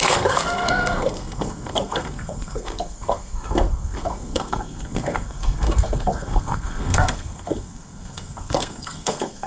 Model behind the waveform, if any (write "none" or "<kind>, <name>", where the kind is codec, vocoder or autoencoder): codec, SNAC